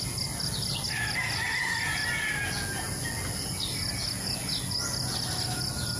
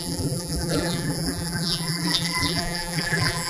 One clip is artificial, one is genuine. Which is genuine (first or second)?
first